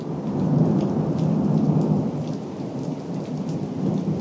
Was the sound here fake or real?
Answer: real